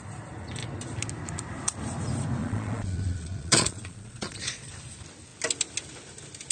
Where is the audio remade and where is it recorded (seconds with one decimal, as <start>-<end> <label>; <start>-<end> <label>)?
0.0-2.4 recorded; 2.4-4.7 remade; 4.7-6.5 recorded